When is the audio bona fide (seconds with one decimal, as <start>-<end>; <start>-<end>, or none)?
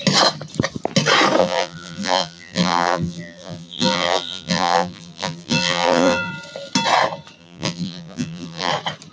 0.0-1.4; 6.3-7.4; 8.7-9.1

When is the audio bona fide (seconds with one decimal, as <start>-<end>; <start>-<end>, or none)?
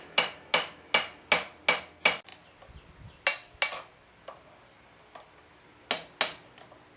0.0-7.0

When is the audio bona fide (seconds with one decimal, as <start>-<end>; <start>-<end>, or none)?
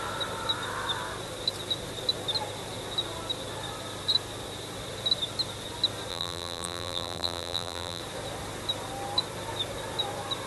0.0-6.1; 8.0-10.5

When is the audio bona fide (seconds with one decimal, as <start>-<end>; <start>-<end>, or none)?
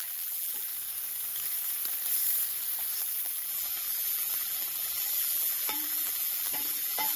0.7-3.0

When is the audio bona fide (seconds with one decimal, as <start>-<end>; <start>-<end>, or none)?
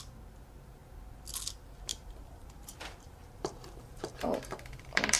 0.0-1.9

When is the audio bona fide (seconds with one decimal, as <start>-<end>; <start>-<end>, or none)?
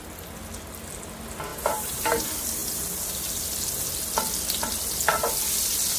0.0-1.5; 2.2-6.0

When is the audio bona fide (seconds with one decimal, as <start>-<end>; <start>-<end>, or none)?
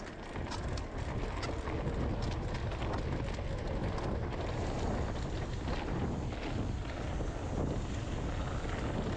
0.0-9.2